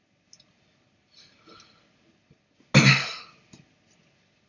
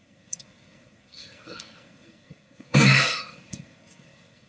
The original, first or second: first